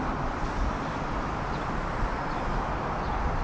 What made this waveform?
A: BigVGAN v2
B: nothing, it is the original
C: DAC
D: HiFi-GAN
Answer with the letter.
B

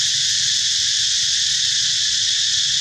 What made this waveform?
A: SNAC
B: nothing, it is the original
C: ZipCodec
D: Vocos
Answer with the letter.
B